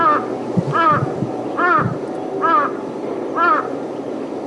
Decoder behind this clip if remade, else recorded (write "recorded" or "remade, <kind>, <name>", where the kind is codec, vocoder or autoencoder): recorded